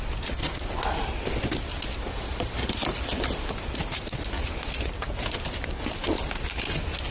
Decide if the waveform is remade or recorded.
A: recorded